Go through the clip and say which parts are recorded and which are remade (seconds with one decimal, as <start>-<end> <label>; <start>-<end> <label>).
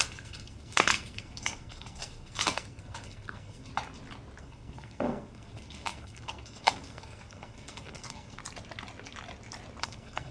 0.0-3.7 remade; 3.7-4.4 recorded; 4.4-8.4 remade; 8.4-9.8 recorded; 9.8-10.3 remade